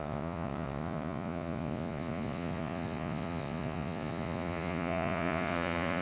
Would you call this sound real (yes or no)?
no